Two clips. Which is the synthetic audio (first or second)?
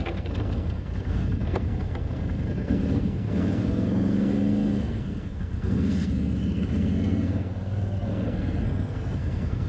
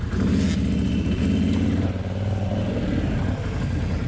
first